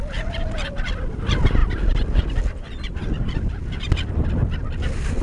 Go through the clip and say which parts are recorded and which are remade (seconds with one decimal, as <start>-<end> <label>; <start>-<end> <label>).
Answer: 0.0-5.2 recorded